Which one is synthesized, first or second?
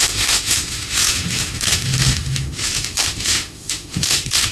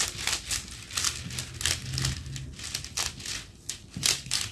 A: first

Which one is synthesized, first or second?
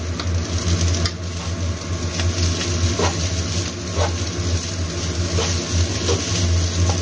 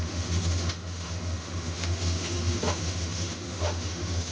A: second